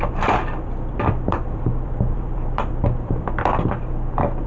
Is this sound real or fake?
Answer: fake